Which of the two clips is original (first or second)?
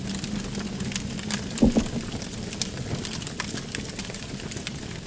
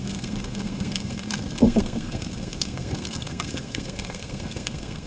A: first